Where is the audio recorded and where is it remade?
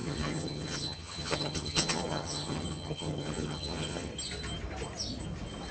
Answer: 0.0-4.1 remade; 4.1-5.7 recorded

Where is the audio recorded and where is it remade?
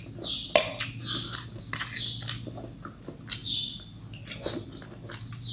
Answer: 0.0-5.5 recorded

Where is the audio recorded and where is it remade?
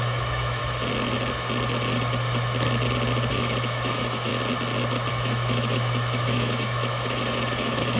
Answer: 0.0-0.6 remade; 0.6-3.3 recorded; 3.3-4.3 remade; 4.3-5.1 recorded; 5.1-8.0 remade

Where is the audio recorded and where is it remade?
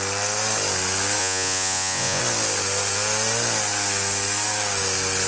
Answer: 0.0-1.2 recorded; 1.2-2.2 remade; 2.2-5.3 recorded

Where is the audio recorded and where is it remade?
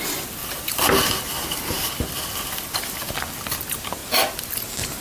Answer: 0.0-0.4 recorded; 0.4-1.9 remade; 1.9-5.0 recorded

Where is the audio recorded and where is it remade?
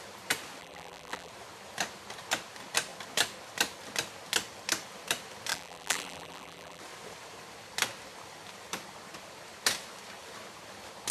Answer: 0.0-0.6 recorded; 0.6-1.3 remade; 1.3-5.5 recorded; 5.5-6.8 remade; 6.8-11.1 recorded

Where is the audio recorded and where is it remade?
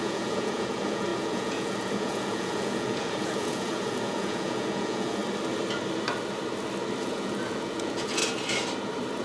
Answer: 0.0-5.2 remade; 5.2-7.0 recorded; 7.0-8.2 remade; 8.2-9.2 recorded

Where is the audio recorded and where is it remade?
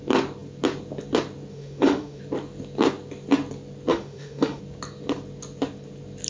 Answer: 0.0-1.5 recorded; 1.5-2.2 remade; 2.2-3.9 recorded; 3.9-4.6 remade; 4.6-6.3 recorded